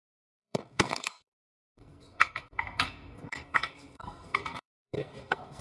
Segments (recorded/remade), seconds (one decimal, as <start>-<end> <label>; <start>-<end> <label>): 0.0-5.6 remade